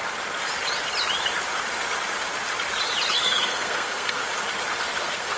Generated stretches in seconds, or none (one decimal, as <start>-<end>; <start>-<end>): 3.2-4.2; 5.0-5.4